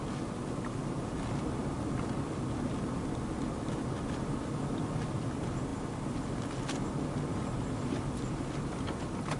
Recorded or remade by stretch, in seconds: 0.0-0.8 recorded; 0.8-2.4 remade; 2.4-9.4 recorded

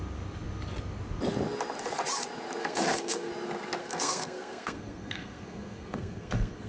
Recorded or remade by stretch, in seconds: 0.0-2.6 recorded; 2.6-3.3 remade; 3.3-3.8 recorded; 3.8-6.7 remade